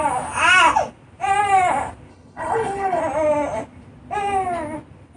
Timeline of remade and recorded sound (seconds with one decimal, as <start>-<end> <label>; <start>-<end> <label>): 0.0-2.1 recorded; 2.1-3.0 remade; 3.0-5.2 recorded